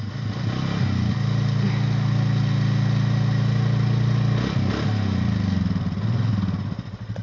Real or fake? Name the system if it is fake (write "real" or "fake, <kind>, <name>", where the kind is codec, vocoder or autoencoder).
real